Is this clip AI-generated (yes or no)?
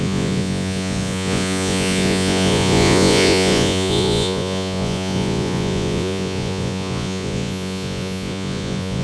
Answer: yes